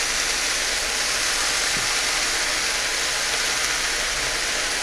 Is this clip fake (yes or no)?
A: no